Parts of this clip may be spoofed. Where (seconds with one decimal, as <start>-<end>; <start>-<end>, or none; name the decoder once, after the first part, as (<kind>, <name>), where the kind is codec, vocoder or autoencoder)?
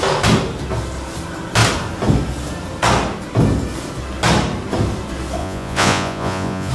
5.4-6.7 (vocoder, Vocos)